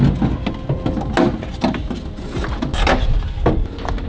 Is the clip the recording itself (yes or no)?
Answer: yes